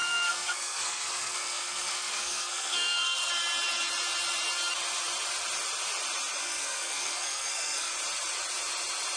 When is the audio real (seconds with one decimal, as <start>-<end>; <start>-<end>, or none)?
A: 3.3-6.4; 7.9-9.2